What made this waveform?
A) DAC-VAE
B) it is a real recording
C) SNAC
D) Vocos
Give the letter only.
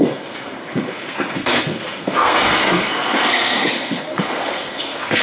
C